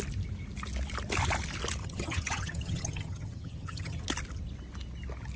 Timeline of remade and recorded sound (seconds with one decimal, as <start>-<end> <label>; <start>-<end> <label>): 0.0-1.8 recorded; 1.8-4.0 remade; 4.0-5.4 recorded